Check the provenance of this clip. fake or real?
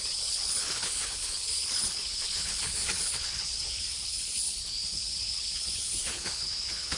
fake